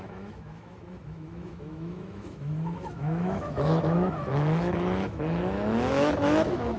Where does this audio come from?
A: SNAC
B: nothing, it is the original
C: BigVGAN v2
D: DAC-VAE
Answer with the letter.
D